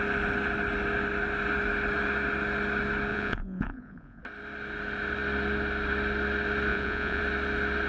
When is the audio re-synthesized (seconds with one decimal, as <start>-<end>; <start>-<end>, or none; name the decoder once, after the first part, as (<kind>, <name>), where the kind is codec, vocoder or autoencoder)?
3.1-4.2 (vocoder, Vocos); 6.7-7.2